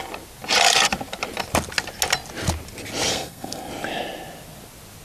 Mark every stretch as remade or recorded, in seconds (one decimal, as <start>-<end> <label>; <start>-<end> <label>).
0.0-3.1 recorded; 3.1-3.7 remade; 3.7-5.0 recorded